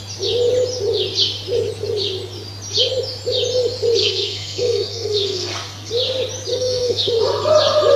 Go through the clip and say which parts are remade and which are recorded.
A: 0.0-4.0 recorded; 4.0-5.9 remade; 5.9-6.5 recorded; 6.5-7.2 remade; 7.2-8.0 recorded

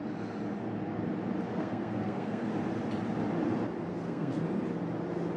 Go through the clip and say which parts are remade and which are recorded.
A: 0.0-1.5 recorded; 1.5-2.5 remade; 2.5-3.9 recorded; 3.9-4.4 remade; 4.4-5.4 recorded

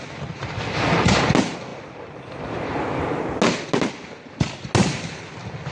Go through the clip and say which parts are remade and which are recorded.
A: 0.0-5.7 recorded

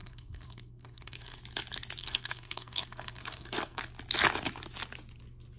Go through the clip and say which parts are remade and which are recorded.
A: 0.0-1.4 remade; 1.4-2.0 recorded; 2.0-3.8 remade; 3.8-5.6 recorded